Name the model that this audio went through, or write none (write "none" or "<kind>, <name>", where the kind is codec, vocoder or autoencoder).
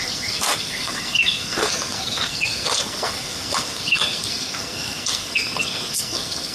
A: codec, SNAC